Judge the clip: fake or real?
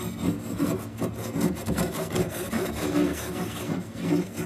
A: fake